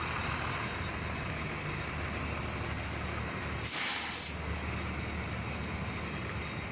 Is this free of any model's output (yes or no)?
yes